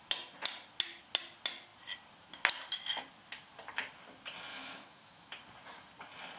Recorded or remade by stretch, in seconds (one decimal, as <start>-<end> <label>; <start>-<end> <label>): 0.0-4.5 recorded; 4.5-5.3 remade; 5.3-6.4 recorded